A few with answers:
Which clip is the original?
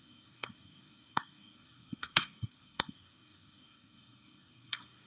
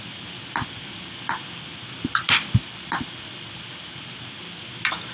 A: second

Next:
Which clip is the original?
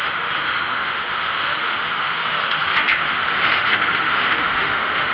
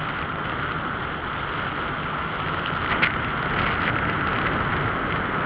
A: second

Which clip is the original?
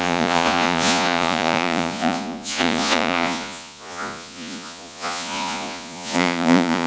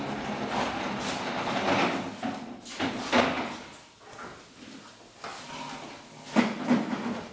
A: second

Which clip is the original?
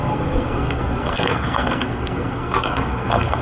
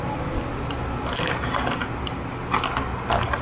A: second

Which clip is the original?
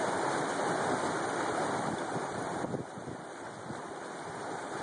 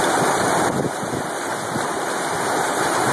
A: second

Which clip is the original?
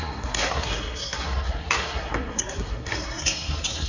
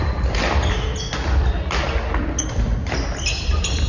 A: second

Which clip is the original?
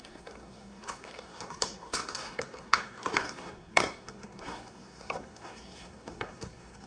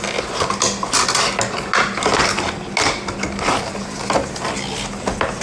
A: second